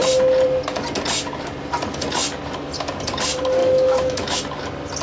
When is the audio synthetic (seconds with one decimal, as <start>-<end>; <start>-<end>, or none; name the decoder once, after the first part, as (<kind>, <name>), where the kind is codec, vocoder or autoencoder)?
3.6-4.4 (autoencoder, DAC-VAE)